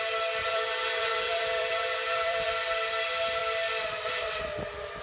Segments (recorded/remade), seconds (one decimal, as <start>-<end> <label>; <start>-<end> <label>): 0.0-0.4 recorded; 0.4-2.5 remade; 2.5-5.0 recorded

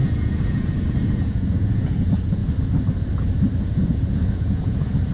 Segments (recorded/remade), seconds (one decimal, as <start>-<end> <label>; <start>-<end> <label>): 0.0-2.4 remade; 2.4-3.6 recorded; 3.6-5.1 remade